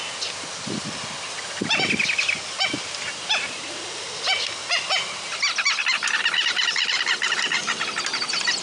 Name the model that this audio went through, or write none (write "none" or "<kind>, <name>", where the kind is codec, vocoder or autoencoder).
none